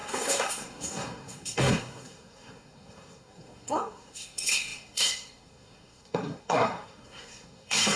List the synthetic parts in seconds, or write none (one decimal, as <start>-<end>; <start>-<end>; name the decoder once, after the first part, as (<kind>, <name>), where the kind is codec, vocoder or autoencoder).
0.0-8.0 (codec, SNAC)